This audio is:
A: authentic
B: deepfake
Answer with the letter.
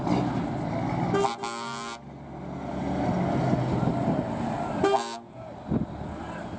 A